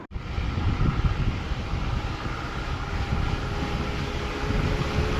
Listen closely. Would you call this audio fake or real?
real